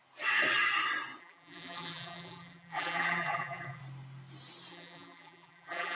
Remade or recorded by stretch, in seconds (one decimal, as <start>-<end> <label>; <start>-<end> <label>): 0.0-1.2 recorded; 1.2-3.8 remade; 3.8-4.7 recorded; 4.7-6.0 remade